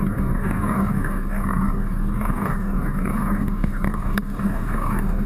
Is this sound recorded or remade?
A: remade